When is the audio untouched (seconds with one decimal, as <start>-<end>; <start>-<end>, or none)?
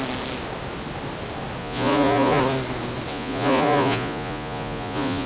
0.0-1.6; 2.4-3.1